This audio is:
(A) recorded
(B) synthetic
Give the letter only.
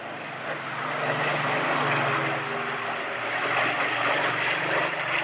A